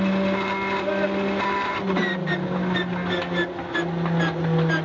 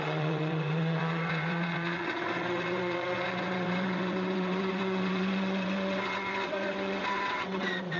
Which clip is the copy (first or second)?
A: second